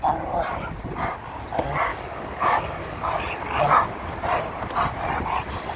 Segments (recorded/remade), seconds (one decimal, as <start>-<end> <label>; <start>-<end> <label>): 0.0-1.9 recorded; 1.9-3.1 remade; 3.1-5.8 recorded